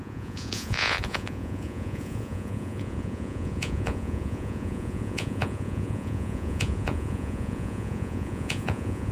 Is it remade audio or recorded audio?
remade